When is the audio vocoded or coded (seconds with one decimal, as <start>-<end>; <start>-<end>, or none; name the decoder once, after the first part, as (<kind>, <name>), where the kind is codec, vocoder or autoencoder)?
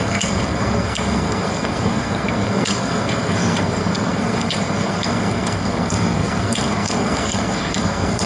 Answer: 0.0-8.3 (codec, SNAC)